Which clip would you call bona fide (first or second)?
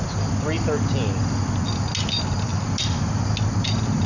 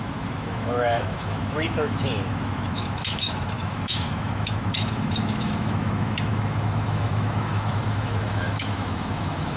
first